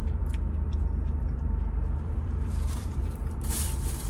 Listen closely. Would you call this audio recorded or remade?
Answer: remade